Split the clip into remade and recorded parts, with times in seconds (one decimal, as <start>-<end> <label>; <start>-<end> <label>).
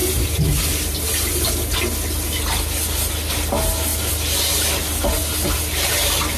0.0-6.4 recorded